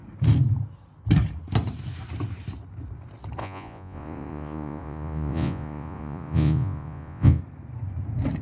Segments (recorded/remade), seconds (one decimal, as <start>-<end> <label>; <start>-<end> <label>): 0.0-3.4 recorded; 3.4-7.4 remade; 7.4-8.4 recorded